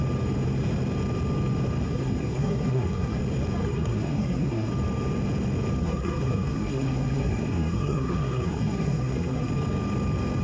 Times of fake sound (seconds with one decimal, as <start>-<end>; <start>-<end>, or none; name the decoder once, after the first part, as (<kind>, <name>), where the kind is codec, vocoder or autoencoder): 1.8-3.2 (codec, SNAC); 3.6-4.7; 5.8-9.5

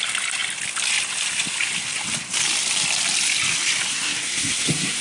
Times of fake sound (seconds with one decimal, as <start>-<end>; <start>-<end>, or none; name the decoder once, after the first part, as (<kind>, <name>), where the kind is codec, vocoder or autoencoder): 3.9-5.0 (codec, SNAC)